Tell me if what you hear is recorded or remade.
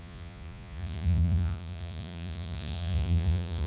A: remade